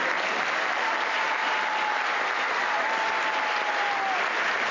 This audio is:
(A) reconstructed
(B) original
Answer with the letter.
B